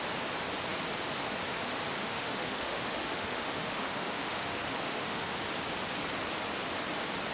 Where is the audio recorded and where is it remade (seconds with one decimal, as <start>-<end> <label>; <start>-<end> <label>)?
0.0-2.0 recorded; 2.0-5.4 remade; 5.4-7.3 recorded